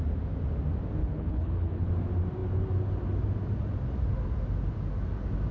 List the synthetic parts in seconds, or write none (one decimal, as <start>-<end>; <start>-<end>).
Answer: 1.0-1.9